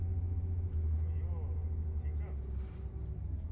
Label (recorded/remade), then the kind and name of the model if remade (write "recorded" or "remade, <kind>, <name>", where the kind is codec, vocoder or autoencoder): recorded